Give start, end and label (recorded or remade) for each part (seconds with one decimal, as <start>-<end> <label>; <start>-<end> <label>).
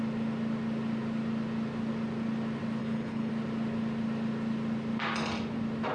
0.0-2.8 recorded; 2.8-3.3 remade; 3.3-5.9 recorded